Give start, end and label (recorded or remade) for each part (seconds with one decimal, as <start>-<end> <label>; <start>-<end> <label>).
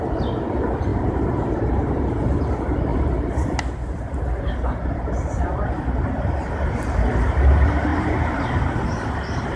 0.0-0.9 recorded; 0.9-1.9 remade; 1.9-7.9 recorded; 7.9-8.8 remade; 8.8-9.6 recorded